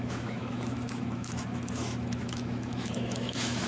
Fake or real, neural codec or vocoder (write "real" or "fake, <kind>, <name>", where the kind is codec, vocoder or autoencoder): fake, autoencoder, DAC-VAE